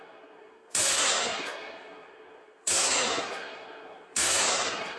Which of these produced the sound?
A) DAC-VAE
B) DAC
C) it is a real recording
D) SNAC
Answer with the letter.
D